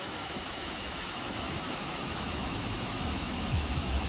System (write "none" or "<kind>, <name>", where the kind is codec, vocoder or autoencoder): autoencoder, DAC-VAE